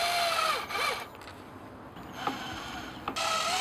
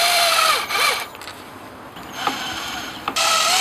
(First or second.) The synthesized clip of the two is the second